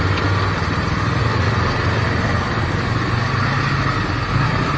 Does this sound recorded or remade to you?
recorded